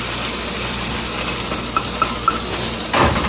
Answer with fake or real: real